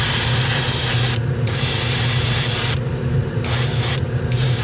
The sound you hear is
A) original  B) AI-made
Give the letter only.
A